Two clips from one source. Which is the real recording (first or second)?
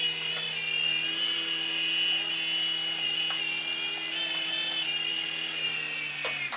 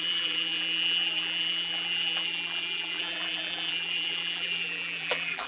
first